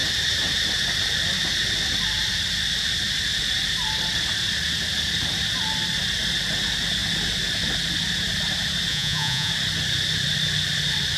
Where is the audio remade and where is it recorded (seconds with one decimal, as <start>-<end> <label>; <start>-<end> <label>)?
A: 0.0-8.9 recorded; 8.9-9.5 remade; 9.5-11.2 recorded